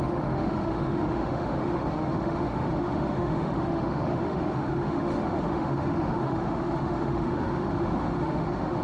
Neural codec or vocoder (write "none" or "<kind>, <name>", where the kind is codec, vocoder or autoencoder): autoencoder, DAC-VAE